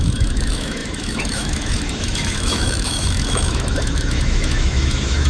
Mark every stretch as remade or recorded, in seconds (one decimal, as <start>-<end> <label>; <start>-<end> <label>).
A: 0.0-5.3 remade